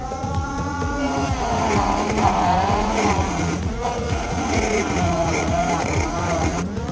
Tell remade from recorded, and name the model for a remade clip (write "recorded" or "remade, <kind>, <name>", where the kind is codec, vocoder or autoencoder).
remade, vocoder, Vocos